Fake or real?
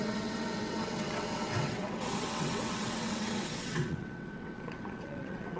fake